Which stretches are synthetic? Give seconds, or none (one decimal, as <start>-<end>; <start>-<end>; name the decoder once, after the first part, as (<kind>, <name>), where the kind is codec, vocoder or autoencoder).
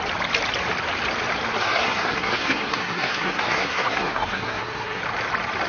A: 1.6-5.0 (codec, SNAC)